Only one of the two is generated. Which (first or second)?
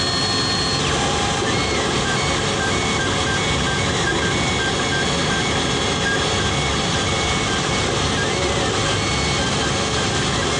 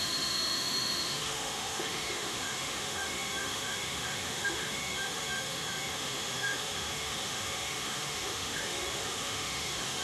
second